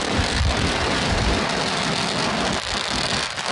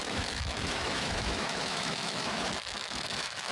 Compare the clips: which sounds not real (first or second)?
second